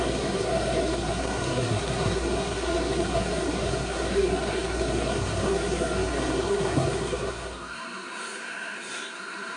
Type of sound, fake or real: fake